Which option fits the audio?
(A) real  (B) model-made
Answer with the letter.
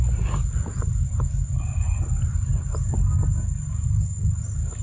A